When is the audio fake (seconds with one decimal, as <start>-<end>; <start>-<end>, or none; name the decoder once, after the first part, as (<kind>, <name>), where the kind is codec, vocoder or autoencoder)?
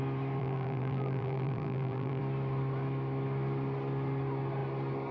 0.4-2.2 (vocoder, BigVGAN v2)